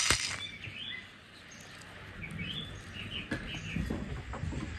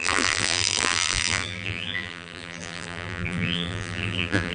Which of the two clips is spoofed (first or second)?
second